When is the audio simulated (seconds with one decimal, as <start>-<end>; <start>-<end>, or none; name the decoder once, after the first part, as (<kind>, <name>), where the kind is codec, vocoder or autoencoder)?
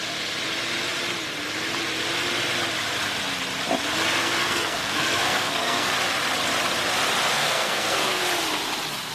4.2-5.9 (codec, SNAC); 7.3-8.2